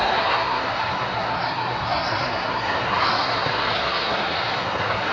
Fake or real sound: fake